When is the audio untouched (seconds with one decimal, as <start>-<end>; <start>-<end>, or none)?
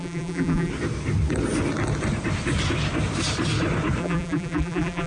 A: 0.7-4.0